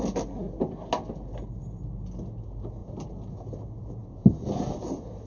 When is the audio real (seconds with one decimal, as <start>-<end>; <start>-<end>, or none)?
0.0-5.3